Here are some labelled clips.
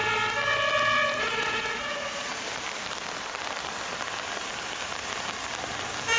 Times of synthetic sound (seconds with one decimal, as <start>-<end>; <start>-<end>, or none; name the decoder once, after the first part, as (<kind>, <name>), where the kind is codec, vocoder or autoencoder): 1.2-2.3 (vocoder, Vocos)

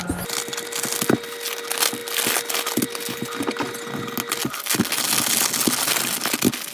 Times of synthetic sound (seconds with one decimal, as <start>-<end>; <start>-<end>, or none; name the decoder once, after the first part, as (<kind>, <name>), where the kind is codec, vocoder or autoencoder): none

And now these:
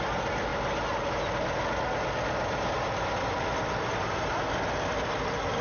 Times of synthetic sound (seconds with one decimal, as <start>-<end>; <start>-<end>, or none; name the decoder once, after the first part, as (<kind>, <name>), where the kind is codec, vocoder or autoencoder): none